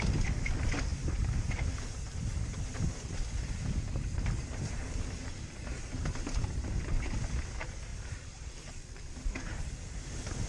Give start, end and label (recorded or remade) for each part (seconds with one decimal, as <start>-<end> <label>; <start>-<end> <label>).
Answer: 0.0-7.9 recorded; 7.9-8.5 remade; 8.5-10.5 recorded